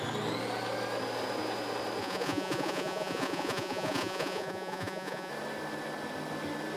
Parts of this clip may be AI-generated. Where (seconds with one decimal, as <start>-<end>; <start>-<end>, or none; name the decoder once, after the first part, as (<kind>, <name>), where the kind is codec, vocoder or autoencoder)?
2.0-5.3 (vocoder, Vocos)